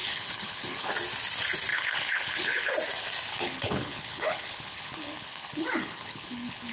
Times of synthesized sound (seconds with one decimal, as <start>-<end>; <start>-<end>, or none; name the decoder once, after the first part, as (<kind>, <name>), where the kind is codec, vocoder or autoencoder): 0.0-0.9 (codec, HILCodec); 1.7-2.7; 3.3-6.7